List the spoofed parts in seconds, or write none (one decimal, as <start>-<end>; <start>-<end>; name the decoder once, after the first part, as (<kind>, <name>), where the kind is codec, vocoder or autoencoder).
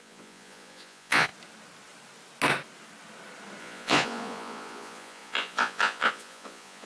0.0-1.3 (vocoder, Vocos); 3.6-6.9